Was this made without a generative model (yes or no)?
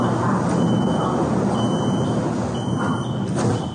yes